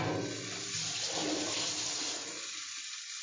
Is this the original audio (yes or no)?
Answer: yes